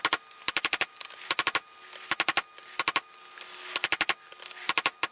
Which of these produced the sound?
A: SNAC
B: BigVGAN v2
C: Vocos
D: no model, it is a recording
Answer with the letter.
D